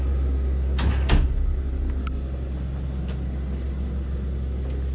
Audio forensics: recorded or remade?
recorded